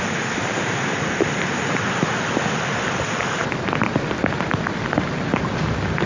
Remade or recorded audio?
recorded